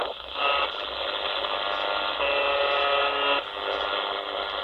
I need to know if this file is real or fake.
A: real